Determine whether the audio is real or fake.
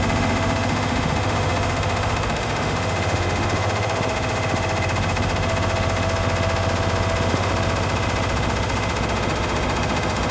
fake